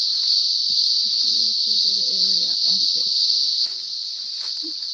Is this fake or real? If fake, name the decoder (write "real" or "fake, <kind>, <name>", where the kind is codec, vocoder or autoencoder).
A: fake, vocoder, Vocos